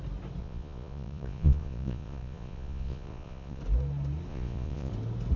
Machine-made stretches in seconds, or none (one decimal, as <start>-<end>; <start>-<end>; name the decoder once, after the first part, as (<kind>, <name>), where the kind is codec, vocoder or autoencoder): 0.4-3.6 (vocoder, Vocos); 4.3-4.9